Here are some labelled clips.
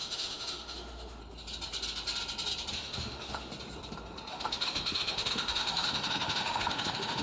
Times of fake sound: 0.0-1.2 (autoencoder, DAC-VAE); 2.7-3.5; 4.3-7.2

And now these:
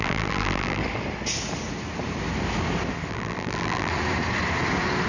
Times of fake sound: 0.0-0.8 (vocoder, BigVGAN v2); 3.1-3.9

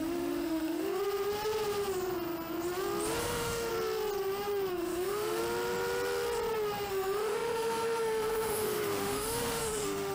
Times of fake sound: 0.0-1.0 (autoencoder, DAC-VAE); 3.2-3.7; 4.7-5.4; 6.9-10.1

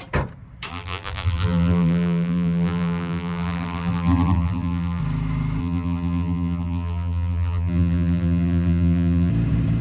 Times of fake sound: 0.7-5.0 (vocoder, BigVGAN v2); 5.6-9.3

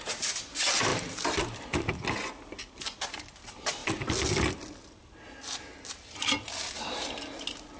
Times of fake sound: 0.9-1.6 (vocoder, BigVGAN v2); 5.0-7.0